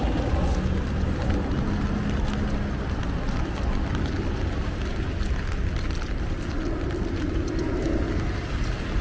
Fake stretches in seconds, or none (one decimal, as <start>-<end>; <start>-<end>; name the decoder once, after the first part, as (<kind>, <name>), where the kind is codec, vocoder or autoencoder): none